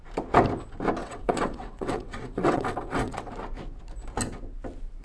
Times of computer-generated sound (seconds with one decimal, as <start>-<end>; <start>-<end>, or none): 1.0-3.3